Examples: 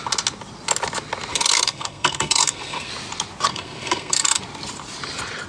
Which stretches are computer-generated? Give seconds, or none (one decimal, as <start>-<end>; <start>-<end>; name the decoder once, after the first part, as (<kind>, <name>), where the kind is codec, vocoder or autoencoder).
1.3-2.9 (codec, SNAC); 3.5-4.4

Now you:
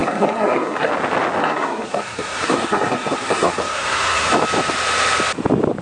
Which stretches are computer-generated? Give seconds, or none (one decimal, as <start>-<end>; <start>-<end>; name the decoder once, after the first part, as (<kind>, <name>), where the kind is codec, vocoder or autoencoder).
0.0-0.9 (codec, SNAC); 1.4-4.3

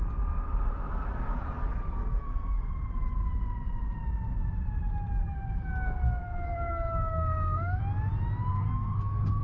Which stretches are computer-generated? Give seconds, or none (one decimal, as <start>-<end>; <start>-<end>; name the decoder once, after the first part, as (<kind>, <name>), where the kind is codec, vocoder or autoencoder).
2.0-2.7 (codec, SNAC); 5.2-5.7; 6.2-7.8; 8.5-9.4

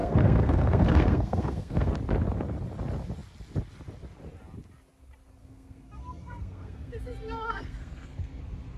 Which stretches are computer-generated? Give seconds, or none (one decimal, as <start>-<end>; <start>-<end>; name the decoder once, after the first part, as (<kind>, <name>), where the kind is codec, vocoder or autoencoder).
0.0-1.9 (codec, SNAC); 5.4-8.4

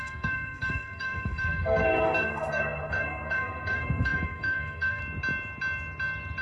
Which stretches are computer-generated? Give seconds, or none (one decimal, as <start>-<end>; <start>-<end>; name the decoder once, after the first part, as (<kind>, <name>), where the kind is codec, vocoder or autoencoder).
0.0-5.0 (codec, SNAC)

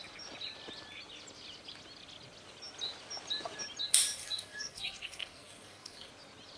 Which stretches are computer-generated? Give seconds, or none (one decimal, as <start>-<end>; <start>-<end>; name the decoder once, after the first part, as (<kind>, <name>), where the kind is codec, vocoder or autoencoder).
4.2-6.1 (codec, SNAC)

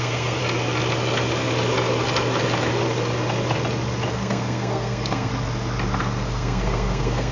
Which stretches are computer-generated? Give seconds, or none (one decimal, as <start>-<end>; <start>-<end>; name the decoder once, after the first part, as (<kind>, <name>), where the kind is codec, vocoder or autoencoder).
0.0-0.4 (codec, SNAC); 4.1-5.3; 6.0-7.3

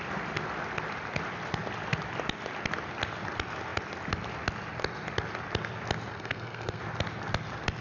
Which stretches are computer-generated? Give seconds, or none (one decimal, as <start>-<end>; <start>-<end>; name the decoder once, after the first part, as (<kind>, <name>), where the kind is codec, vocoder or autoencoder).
6.1-6.8 (codec, SNAC)